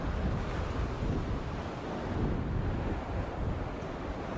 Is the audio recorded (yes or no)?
yes